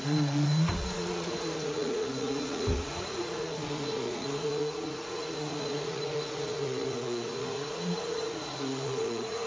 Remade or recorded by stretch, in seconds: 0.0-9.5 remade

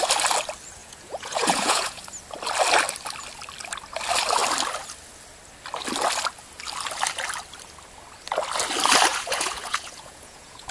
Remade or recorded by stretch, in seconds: 0.0-0.8 recorded; 0.8-2.0 remade; 2.0-9.1 recorded; 9.1-10.7 remade

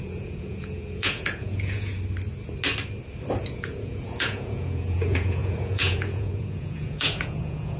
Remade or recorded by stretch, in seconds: 0.0-1.9 remade; 1.9-3.5 recorded; 3.5-7.8 remade